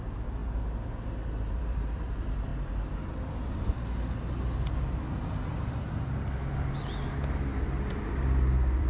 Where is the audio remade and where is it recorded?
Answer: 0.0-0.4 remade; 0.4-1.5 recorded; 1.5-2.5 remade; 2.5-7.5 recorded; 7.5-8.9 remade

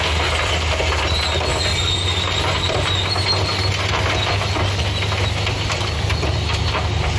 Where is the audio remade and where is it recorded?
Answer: 0.0-7.2 recorded

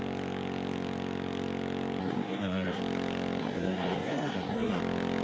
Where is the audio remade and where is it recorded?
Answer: 0.0-2.0 recorded; 2.0-2.8 remade; 2.8-3.4 recorded; 3.4-4.8 remade; 4.8-5.2 recorded

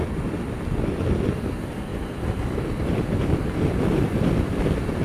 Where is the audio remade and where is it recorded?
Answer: 0.0-1.9 recorded; 1.9-3.8 remade; 3.8-5.0 recorded

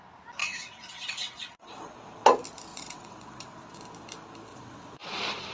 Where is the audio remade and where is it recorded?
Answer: 0.0-0.4 recorded; 0.4-1.7 remade; 1.7-2.7 recorded; 2.7-3.8 remade; 3.8-4.5 recorded; 4.5-5.0 remade; 5.0-5.5 recorded

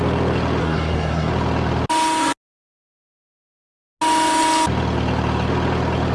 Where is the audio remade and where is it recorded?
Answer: 0.0-0.6 recorded; 0.6-1.3 remade; 1.3-6.1 recorded

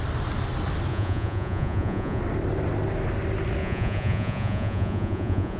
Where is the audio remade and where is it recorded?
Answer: 0.0-0.9 recorded; 0.9-2.2 remade; 2.2-3.6 recorded; 3.6-5.6 remade